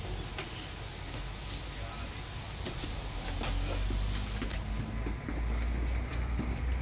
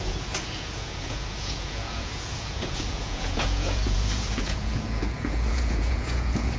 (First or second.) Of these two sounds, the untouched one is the first